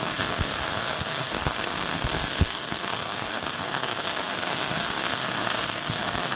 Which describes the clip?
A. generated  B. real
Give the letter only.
A